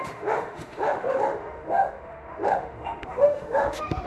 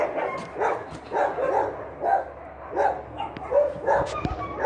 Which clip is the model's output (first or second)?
first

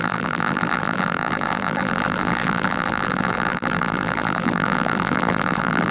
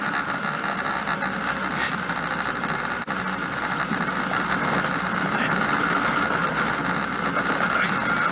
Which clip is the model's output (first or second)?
first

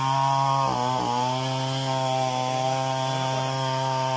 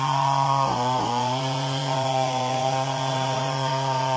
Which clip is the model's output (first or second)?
second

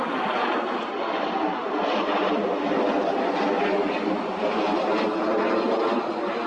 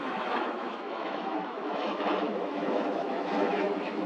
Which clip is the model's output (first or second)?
second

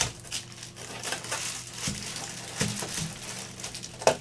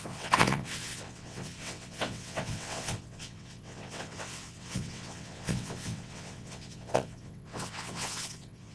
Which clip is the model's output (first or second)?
second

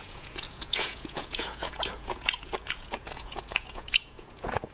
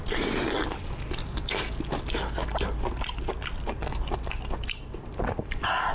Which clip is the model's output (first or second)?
first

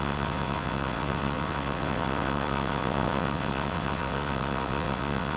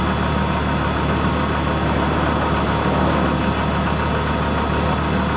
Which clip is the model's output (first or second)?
first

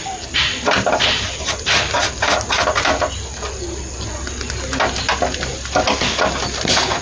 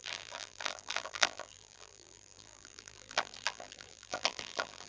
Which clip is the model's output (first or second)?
second